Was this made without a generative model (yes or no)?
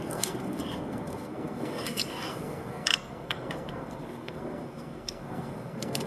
no